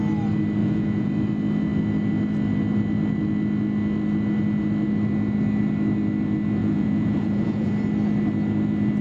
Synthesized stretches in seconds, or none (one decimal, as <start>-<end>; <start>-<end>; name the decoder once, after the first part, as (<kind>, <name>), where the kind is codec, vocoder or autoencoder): 0.6-1.1 (vocoder, Vocos); 6.6-7.7